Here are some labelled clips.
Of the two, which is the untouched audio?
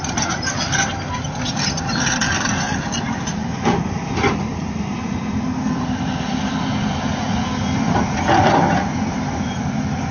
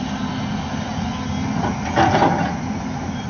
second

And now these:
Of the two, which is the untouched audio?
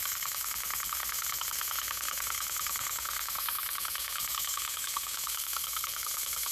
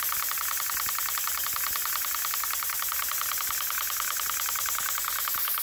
second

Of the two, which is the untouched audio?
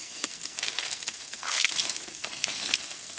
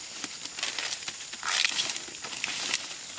second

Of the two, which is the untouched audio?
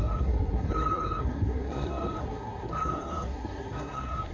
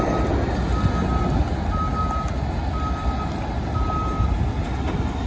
second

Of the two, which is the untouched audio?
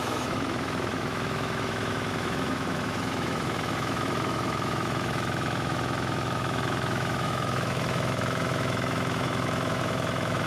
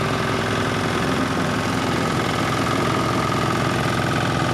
second